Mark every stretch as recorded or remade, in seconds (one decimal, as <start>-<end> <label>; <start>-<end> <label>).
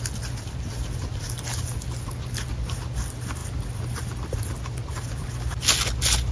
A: 0.0-6.3 recorded